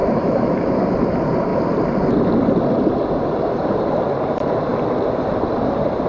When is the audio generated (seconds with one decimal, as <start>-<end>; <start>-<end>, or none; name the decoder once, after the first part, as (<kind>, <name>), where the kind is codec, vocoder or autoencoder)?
0.0-0.8 (autoencoder, DAC-VAE)